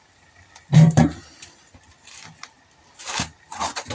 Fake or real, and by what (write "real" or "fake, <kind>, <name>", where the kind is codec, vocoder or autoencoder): real